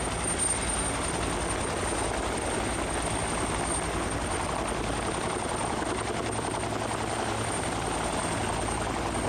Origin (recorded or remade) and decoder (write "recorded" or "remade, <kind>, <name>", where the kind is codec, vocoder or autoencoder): recorded